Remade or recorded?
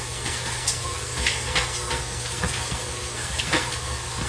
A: remade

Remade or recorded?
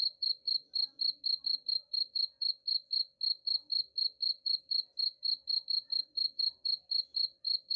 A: recorded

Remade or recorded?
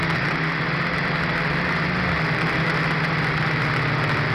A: recorded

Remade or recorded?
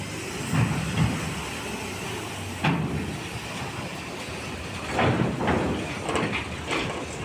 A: recorded